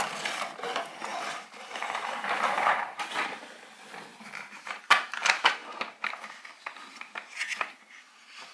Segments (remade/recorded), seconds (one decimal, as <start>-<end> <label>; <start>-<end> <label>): 0.0-1.1 recorded; 1.1-3.4 remade; 3.4-4.1 recorded; 4.1-4.8 remade; 4.8-5.6 recorded; 5.6-6.1 remade; 6.1-8.5 recorded